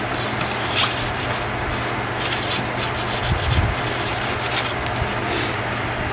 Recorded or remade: recorded